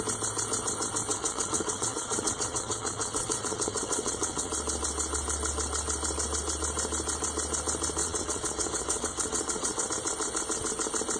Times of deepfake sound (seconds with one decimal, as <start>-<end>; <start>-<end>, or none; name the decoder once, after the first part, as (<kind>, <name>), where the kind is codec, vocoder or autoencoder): 1.1-4.5 (vocoder, WaveNeXt); 8.0-9.9